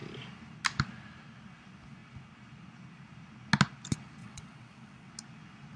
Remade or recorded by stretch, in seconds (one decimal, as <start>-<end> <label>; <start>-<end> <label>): 0.0-4.2 recorded; 4.2-5.1 remade; 5.1-5.8 recorded